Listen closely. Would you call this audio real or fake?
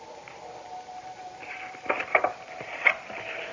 fake